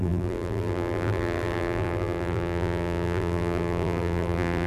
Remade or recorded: remade